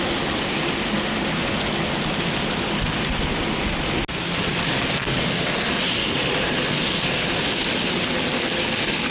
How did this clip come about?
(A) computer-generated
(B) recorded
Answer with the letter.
B